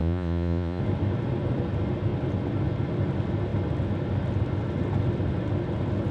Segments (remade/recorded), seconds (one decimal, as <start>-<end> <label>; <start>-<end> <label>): 0.0-0.8 remade; 0.8-6.1 recorded